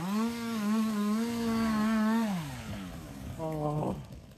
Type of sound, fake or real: fake